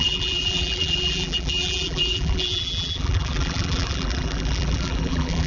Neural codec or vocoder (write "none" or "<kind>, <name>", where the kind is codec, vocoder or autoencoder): vocoder, BigVGAN v2